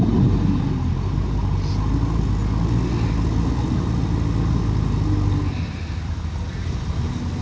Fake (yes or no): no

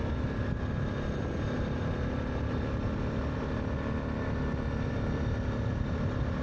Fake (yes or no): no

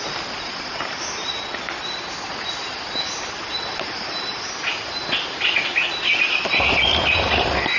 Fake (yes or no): no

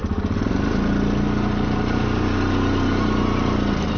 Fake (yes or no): no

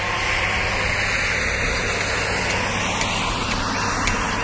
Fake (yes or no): no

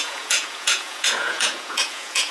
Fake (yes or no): yes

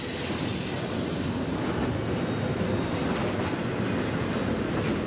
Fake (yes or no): no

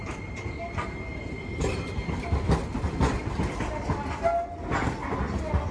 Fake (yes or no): no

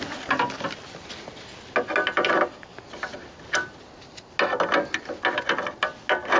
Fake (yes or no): no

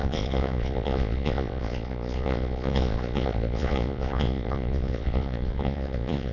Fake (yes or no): yes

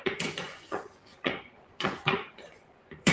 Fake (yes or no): yes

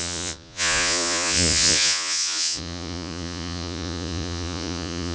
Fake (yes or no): yes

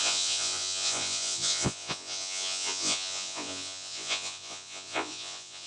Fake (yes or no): yes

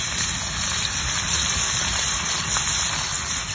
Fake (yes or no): no